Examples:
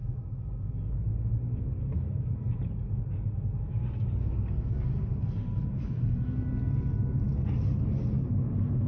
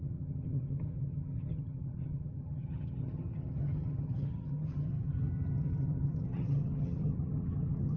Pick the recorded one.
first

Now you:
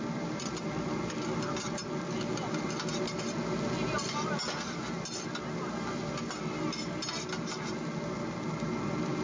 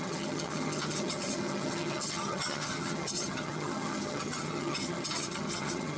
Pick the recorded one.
first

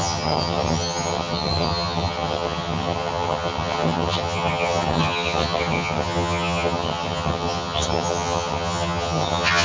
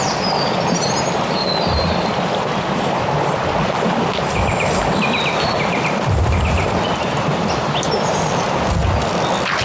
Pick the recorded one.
second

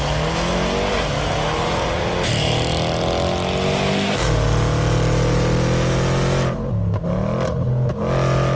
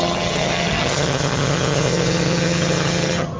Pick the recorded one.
first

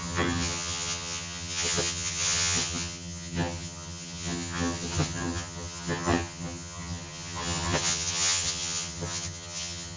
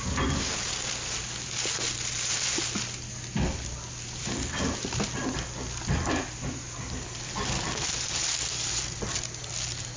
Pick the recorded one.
second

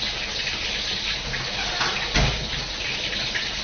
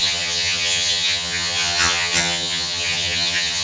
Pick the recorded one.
first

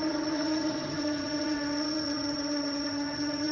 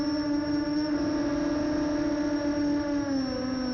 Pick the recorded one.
second